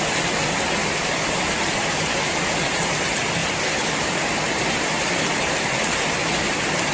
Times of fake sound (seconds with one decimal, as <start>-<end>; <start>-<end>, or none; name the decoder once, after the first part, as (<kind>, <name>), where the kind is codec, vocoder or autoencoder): 0.8-1.4 (vocoder, BigVGAN v2); 3.4-5.6